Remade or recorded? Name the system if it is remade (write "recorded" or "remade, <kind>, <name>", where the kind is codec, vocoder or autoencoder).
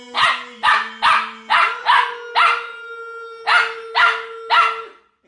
recorded